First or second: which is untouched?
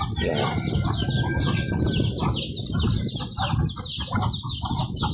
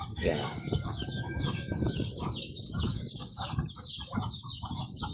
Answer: first